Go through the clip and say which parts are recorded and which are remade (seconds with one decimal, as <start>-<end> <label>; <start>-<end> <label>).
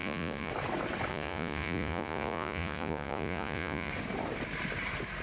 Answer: 0.0-0.5 remade; 0.5-1.1 recorded; 1.1-3.9 remade; 3.9-5.2 recorded